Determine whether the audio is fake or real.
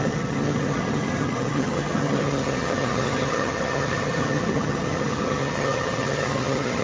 fake